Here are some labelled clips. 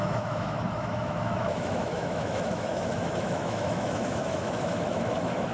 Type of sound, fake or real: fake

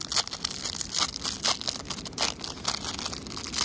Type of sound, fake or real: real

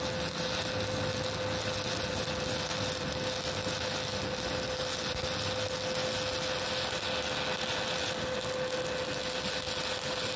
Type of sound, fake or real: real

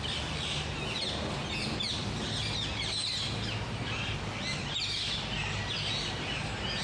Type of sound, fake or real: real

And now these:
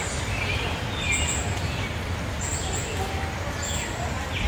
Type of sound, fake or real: real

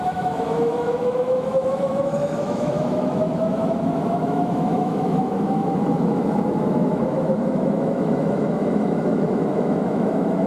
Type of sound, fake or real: fake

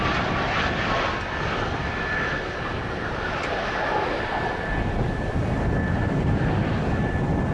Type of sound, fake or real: real